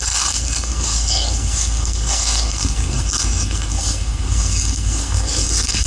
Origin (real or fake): fake